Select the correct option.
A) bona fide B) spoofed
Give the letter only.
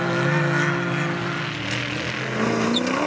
A